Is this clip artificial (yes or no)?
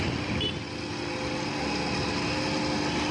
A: no